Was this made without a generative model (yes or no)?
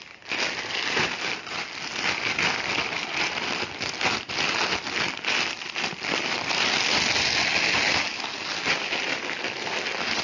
yes